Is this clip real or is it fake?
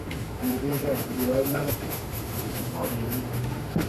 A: fake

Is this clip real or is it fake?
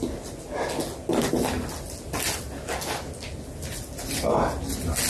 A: real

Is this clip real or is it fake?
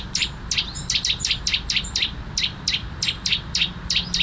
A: real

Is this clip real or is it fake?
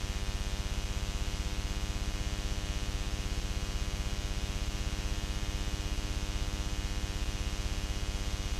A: real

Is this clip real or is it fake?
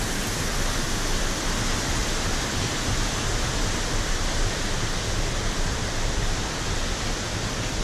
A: real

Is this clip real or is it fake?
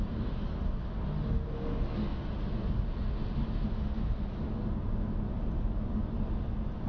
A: real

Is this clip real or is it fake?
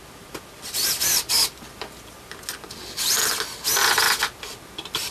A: real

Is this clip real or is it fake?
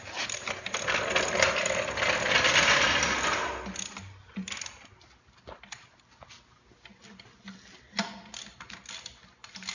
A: real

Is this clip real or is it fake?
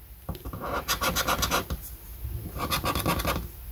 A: real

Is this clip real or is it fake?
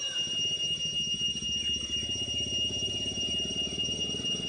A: real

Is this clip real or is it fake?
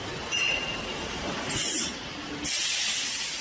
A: real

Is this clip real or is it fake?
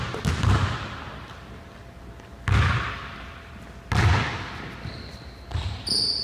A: real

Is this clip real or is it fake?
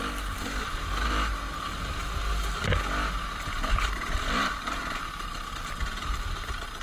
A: real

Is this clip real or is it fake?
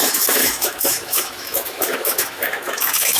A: fake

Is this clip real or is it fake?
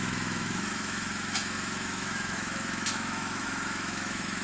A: fake